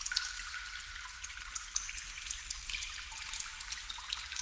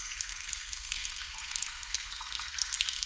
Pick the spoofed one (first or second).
second